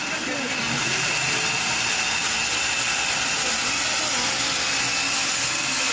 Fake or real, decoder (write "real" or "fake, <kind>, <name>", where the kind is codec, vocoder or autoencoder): real